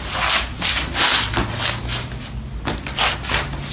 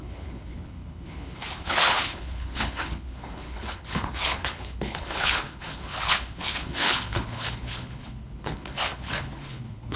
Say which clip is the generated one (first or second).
second